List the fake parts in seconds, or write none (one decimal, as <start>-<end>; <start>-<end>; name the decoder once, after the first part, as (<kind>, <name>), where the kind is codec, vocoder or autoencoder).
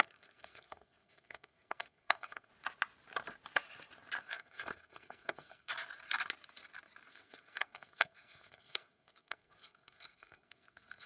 0.0-2.5 (codec, SNAC); 4.2-5.7; 7.1-11.1